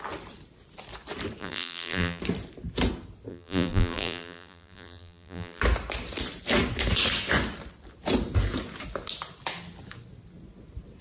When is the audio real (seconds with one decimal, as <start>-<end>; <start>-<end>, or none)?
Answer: 0.0-1.4; 2.2-3.3; 5.6-11.0